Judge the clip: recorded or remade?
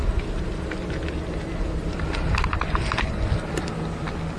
recorded